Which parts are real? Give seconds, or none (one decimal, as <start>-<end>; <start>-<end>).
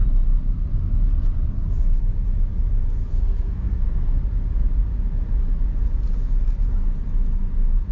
0.0-3.1; 4.2-7.9